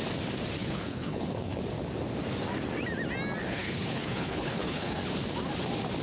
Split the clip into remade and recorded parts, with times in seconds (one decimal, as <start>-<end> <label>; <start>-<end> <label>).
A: 0.0-0.6 recorded; 0.6-1.6 remade; 1.6-3.5 recorded; 3.5-5.0 remade; 5.0-6.0 recorded